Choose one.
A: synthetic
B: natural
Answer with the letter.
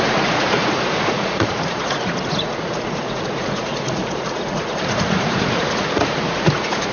A